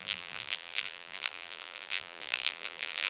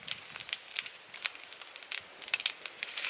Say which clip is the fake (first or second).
first